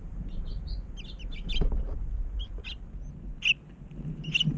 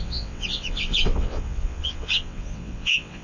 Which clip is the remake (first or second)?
second